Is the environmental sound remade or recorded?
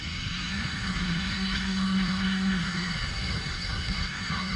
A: remade